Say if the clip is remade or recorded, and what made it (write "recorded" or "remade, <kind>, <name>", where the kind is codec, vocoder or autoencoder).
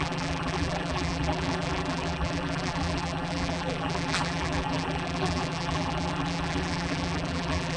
remade, vocoder, BigVGAN v2